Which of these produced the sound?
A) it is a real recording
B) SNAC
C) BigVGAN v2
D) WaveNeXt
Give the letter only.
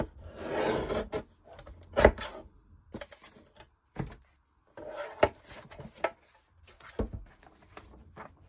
A